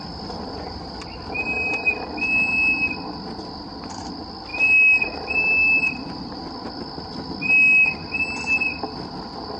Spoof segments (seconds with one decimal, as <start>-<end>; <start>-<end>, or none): none